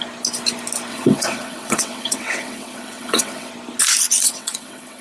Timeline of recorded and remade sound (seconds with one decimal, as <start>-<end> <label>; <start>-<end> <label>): 0.0-0.9 recorded; 0.9-3.5 remade; 3.5-4.2 recorded; 4.2-5.0 remade